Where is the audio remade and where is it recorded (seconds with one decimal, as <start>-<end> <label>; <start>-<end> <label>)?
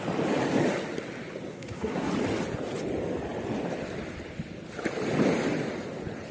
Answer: 0.0-1.5 recorded; 1.5-2.1 remade; 2.1-6.3 recorded